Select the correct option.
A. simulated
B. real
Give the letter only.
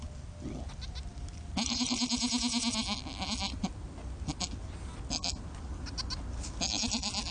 B